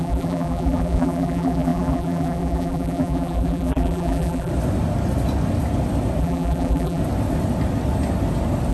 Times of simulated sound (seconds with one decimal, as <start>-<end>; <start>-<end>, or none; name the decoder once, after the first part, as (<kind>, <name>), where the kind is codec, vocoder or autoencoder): 0.0-4.5 (vocoder, BigVGAN v2); 6.2-7.0